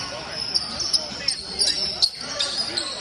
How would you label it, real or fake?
real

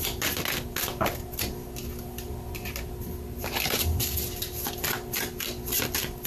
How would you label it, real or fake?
real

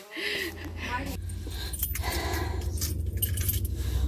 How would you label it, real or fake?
real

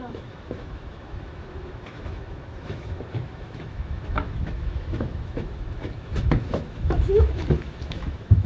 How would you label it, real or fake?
fake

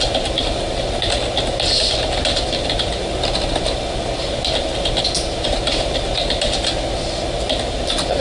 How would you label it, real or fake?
real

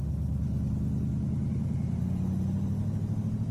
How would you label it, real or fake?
real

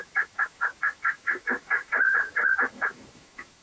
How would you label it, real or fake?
fake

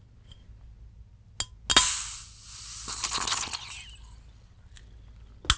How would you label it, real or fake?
real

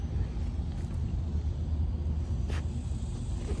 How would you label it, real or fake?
real